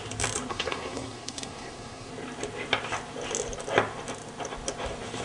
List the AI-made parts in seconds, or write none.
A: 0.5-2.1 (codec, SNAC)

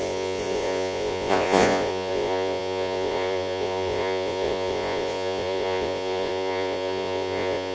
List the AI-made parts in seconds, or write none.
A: 0.0-7.7 (vocoder, Vocos)

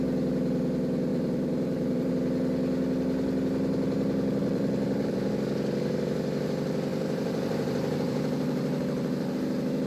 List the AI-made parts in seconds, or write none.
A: 1.1-2.1 (vocoder, BigVGAN v2); 4.4-5.3; 6.9-9.3

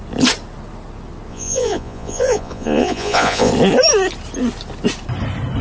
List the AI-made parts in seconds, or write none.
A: 1.3-3.5 (vocoder, Vocos)

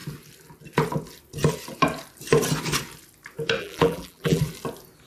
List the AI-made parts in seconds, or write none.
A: 3.6-4.4 (vocoder, BigVGAN v2)